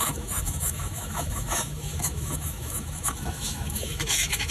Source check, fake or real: fake